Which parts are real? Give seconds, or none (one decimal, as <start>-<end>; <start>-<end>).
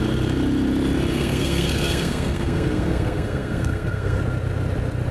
0.0-1.1; 4.2-5.1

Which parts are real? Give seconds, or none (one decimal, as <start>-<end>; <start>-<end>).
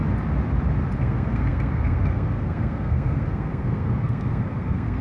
0.0-1.0